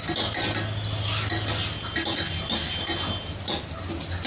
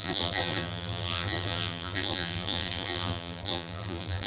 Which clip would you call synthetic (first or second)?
second